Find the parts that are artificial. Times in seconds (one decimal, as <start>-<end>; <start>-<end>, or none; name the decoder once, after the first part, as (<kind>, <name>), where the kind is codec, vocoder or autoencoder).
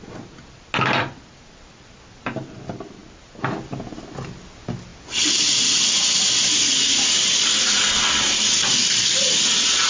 none